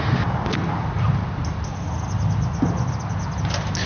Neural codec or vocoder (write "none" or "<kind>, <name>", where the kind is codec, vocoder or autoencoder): none